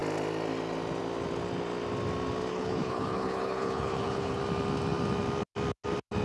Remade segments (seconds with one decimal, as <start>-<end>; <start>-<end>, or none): 2.5-4.4